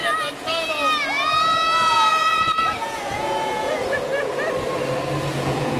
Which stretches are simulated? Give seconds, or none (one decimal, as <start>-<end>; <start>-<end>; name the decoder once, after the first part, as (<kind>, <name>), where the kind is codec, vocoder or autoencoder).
2.1-4.1 (vocoder, Vocos); 5.2-5.8